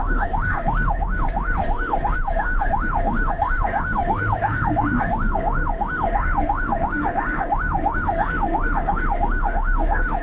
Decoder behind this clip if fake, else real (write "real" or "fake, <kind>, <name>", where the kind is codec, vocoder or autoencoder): fake, autoencoder, DAC-VAE